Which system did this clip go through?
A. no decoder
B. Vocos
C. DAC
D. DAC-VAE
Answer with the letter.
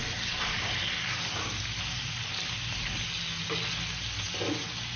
A